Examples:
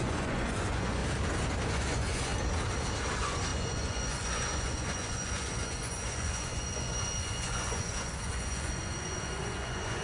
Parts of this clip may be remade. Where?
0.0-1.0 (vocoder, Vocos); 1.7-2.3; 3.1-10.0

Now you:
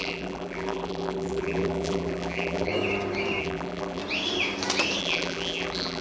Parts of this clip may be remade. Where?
0.0-2.7 (vocoder, BigVGAN v2); 3.4-4.0; 5.0-6.0

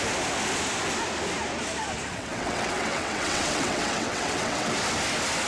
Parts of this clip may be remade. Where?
2.1-4.7 (vocoder, WaveNeXt)

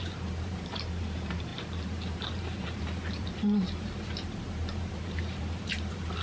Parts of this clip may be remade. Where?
0.0-6.2 (vocoder, BigVGAN v2)

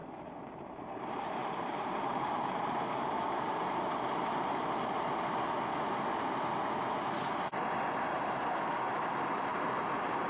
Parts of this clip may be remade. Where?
0.0-5.0 (vocoder, BigVGAN v2); 9.5-10.3

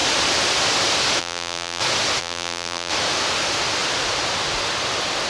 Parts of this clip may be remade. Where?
1.2-1.8 (vocoder, BigVGAN v2); 2.2-2.9